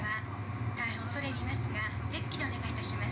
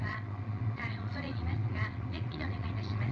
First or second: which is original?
first